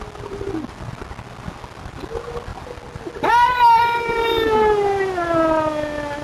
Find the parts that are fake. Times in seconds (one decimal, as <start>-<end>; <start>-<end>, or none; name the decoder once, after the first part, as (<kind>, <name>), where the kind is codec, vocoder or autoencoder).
none